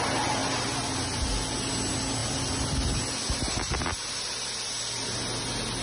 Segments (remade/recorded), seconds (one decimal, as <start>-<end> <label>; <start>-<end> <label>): 0.0-5.8 recorded

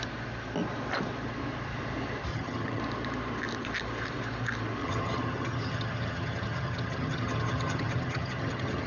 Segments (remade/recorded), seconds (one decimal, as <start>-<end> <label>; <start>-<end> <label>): 0.0-2.3 recorded; 2.3-2.8 remade; 2.8-4.8 recorded; 4.8-8.9 remade

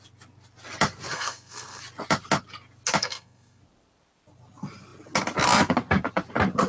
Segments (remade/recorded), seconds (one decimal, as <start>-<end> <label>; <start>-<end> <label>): 0.0-1.1 recorded; 1.1-1.8 remade; 1.8-3.0 recorded; 3.0-3.6 remade; 3.6-6.7 recorded

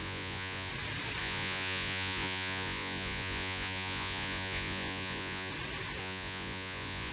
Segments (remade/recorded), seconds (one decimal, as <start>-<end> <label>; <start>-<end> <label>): 0.0-0.7 remade; 0.7-1.2 recorded; 1.2-5.5 remade; 5.5-6.0 recorded; 6.0-7.1 remade

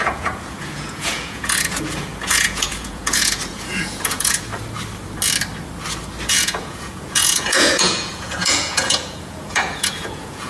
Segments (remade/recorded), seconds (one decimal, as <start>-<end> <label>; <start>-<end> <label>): 0.0-4.5 remade; 4.5-6.3 recorded; 6.3-10.5 remade